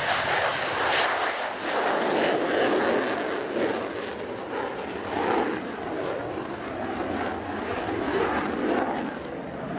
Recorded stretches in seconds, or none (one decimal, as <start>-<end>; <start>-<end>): 0.0-9.8

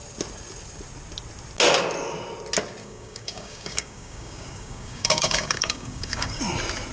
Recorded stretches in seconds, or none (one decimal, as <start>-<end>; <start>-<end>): 0.0-2.8; 6.4-6.9